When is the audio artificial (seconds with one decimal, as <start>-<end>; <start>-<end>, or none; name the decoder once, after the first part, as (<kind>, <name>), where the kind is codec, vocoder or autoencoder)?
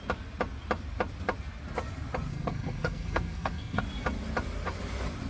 2.3-3.8 (codec, SNAC)